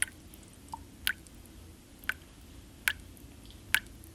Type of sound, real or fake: real